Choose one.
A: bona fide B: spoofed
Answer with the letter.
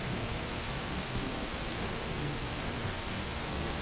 B